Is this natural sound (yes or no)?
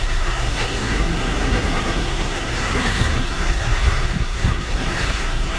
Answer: no